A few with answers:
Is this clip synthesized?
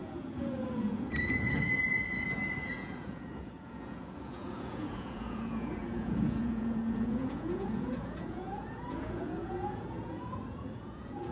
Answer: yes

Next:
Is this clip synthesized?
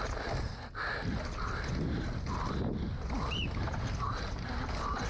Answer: no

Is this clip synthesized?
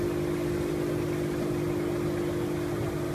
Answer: no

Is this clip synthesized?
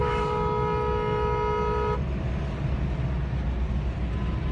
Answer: no